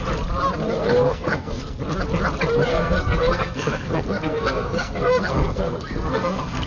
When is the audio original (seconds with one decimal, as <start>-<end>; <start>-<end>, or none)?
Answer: 0.0-0.8; 1.8-2.7